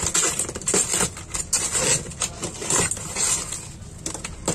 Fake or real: real